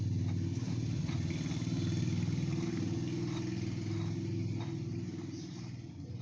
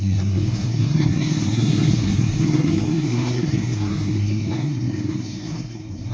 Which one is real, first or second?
first